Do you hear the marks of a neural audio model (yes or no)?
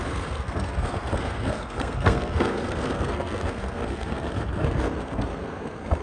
yes